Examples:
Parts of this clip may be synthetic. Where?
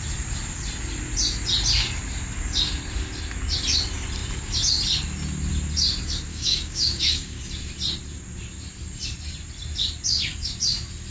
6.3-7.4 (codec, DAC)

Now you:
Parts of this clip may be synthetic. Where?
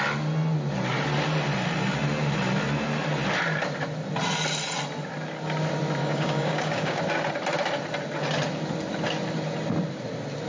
6.0-7.0 (codec, DAC)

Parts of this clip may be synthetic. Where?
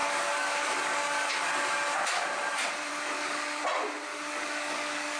0.0-1.3 (codec, DAC); 2.9-3.6; 4.1-5.2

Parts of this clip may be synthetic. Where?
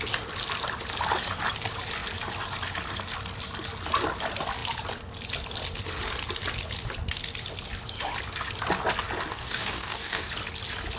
9.3-10.3 (codec, DAC)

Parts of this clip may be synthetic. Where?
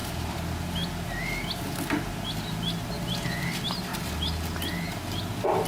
none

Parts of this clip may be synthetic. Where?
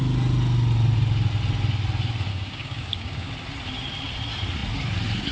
2.3-3.3 (codec, DAC)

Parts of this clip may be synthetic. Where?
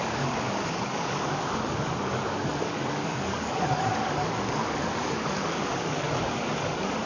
0.0-7.1 (codec, DAC)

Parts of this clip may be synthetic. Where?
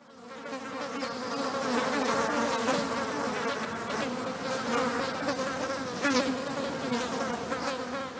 none